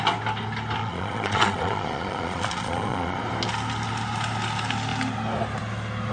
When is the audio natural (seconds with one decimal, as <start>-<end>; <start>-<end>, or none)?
0.0-0.8; 3.2-6.1